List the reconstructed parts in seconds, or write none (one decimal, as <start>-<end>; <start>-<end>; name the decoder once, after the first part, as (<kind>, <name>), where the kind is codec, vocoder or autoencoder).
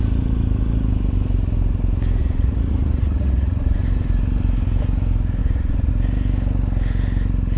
2.2-3.8 (vocoder, Vocos); 5.4-5.9